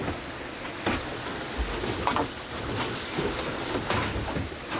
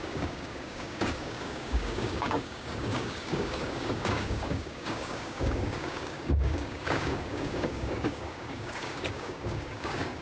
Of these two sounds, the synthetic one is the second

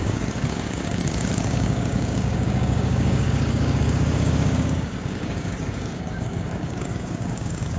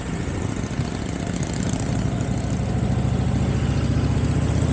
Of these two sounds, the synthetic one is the first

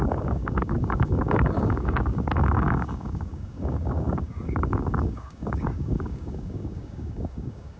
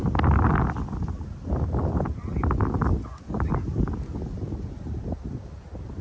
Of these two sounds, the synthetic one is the first